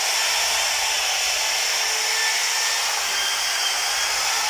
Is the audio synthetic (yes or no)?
no